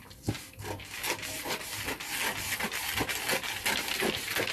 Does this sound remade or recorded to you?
recorded